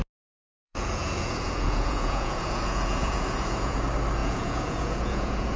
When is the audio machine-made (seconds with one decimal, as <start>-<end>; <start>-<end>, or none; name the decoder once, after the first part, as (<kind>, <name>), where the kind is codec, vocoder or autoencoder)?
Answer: 0.4-3.8 (vocoder, Vocos); 4.2-5.6